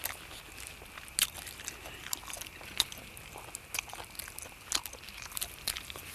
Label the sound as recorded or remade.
recorded